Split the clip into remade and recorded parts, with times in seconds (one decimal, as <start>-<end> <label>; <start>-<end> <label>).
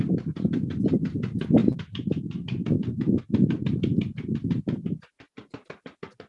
0.0-6.3 recorded